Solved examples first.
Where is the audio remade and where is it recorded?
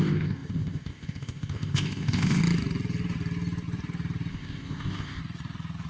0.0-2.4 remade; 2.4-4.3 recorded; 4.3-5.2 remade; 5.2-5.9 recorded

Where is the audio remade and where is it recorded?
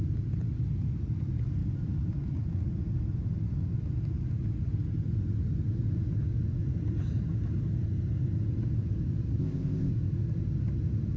0.0-9.4 recorded; 9.4-9.9 remade; 9.9-11.2 recorded